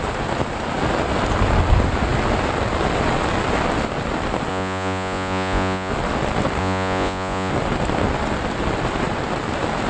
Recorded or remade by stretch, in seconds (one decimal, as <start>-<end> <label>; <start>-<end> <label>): 0.0-4.5 recorded; 4.5-5.9 remade; 5.9-6.6 recorded; 6.6-7.5 remade; 7.5-9.9 recorded